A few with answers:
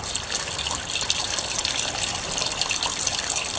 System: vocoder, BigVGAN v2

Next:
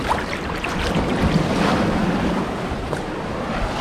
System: none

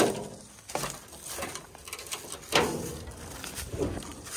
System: none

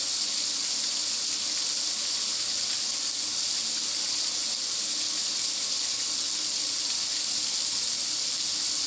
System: none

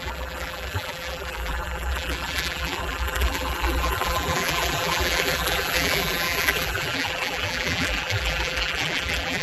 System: vocoder, BigVGAN v2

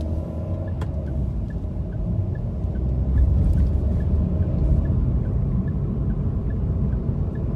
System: none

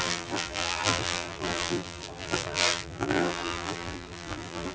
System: vocoder, BigVGAN v2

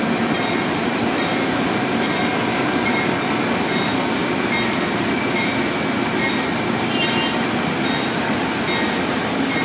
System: vocoder, BigVGAN v2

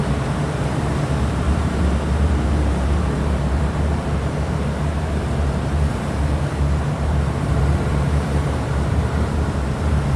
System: vocoder, BigVGAN v2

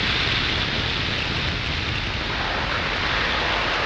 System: none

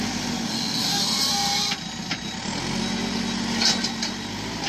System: none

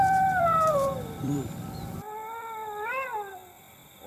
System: vocoder, BigVGAN v2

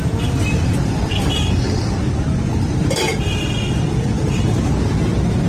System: none